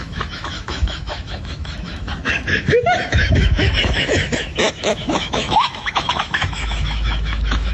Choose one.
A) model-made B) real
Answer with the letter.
A